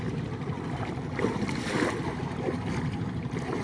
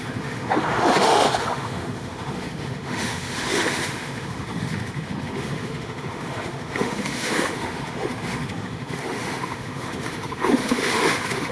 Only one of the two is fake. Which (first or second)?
second